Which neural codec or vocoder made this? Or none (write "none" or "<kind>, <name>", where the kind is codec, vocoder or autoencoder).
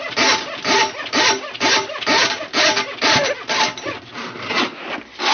none